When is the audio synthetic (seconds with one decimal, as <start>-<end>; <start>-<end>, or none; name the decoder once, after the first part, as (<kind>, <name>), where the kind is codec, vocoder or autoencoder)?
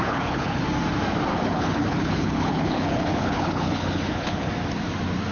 0.0-0.6 (codec, HILCodec); 1.3-4.5